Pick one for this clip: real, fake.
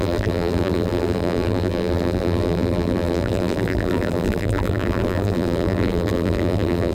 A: fake